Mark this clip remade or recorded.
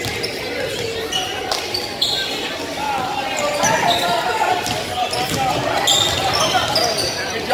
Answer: recorded